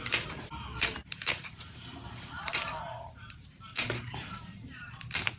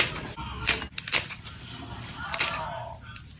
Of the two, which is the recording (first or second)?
second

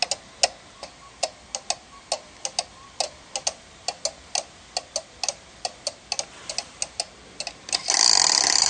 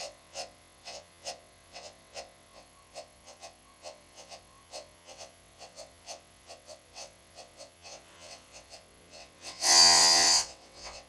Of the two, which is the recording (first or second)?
first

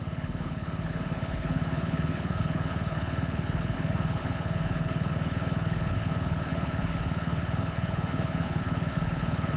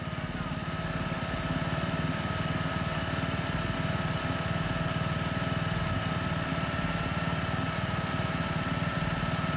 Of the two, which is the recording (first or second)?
second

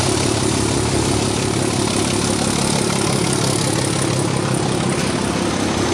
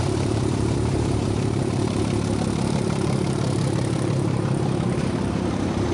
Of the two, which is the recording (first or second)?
first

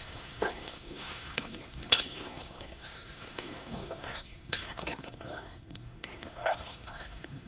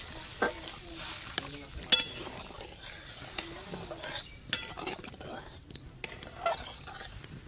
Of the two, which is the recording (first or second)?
second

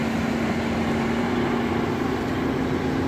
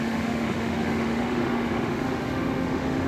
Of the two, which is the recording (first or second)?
first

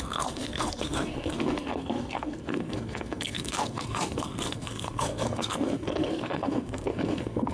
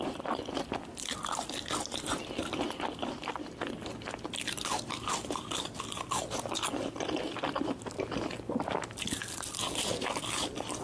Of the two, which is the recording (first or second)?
second